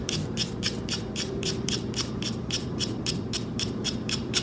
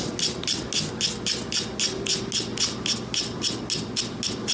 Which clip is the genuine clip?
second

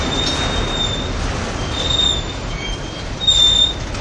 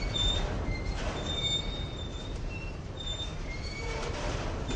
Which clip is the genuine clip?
first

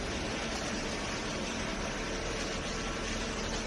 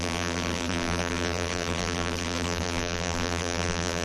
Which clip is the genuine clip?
first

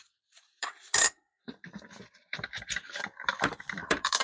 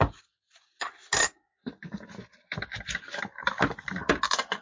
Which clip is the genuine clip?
second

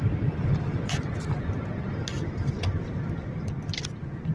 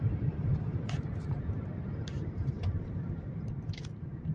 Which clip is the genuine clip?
first